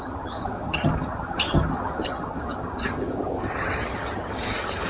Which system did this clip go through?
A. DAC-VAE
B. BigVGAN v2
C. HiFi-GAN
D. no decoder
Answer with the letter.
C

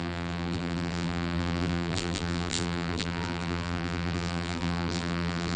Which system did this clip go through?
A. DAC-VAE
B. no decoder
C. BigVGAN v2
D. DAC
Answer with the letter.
C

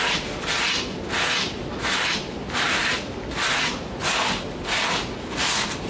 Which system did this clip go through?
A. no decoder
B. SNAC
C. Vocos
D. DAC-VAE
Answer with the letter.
A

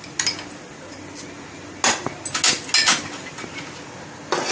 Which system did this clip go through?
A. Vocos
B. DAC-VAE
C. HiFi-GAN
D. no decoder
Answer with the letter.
D